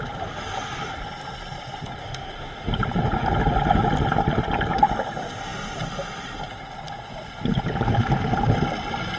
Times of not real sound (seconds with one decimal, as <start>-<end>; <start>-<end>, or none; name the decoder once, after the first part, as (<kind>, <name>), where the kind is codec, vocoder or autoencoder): 2.0-2.7 (autoencoder, DAC-VAE)